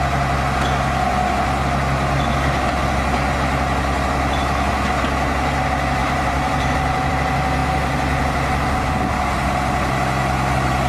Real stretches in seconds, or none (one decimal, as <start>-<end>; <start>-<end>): 0.0-6.0; 7.1-10.9